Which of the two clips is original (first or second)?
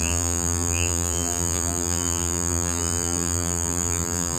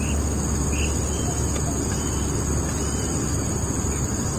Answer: second